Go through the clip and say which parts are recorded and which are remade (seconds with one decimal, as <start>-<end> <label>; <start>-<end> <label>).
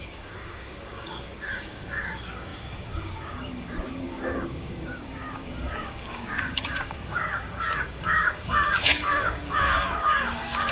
0.0-10.7 remade